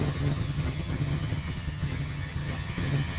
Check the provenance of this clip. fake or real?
fake